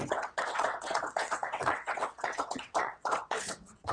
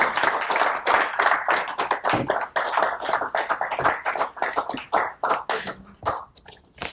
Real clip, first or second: second